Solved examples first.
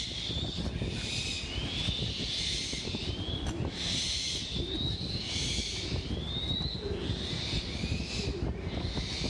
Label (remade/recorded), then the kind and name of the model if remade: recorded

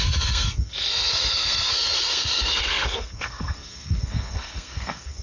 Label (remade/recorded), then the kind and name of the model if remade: remade, codec, SNAC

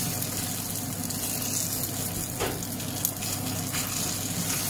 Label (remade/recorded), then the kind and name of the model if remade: recorded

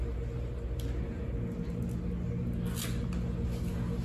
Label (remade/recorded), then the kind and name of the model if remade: recorded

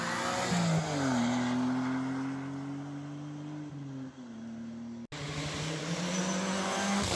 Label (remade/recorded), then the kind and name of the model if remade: recorded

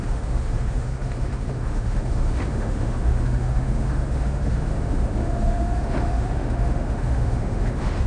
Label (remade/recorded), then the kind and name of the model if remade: remade, autoencoder, DAC-VAE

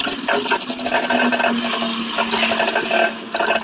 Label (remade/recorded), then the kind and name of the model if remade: recorded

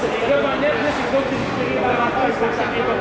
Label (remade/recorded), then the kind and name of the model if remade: recorded